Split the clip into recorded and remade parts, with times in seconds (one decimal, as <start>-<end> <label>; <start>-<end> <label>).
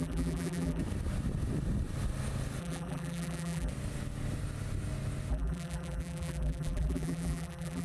0.0-0.8 remade; 0.8-2.6 recorded; 2.6-3.7 remade; 3.7-5.3 recorded; 5.3-7.8 remade